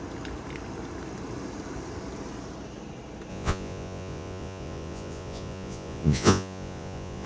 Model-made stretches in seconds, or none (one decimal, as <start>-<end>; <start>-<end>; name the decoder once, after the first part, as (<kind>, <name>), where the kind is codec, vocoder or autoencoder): 3.3-7.3 (vocoder, Vocos)